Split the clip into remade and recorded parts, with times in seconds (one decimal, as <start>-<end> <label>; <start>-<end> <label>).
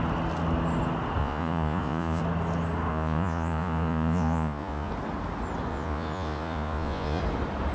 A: 0.0-1.2 recorded; 1.2-2.2 remade; 2.2-2.9 recorded; 2.9-4.9 remade; 4.9-5.7 recorded; 5.7-7.2 remade; 7.2-7.7 recorded